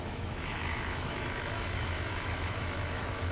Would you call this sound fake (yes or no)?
yes